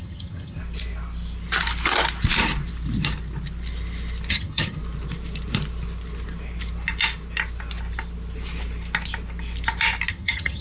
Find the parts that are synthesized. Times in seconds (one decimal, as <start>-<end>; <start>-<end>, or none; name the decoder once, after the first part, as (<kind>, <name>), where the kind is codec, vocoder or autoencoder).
0.0-0.6 (vocoder, HiFi-GAN); 4.3-4.8; 10.1-10.6